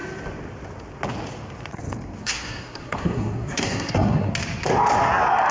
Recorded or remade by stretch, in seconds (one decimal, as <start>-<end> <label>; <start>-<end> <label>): 0.0-2.2 recorded; 2.2-4.3 remade; 4.3-5.5 recorded